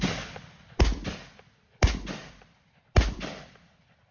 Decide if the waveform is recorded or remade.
remade